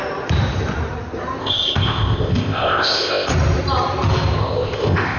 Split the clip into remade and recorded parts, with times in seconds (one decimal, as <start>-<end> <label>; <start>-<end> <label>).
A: 0.0-1.4 recorded; 1.4-3.3 remade; 3.3-4.4 recorded; 4.4-5.2 remade